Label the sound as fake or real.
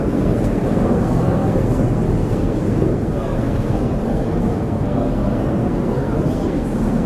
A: fake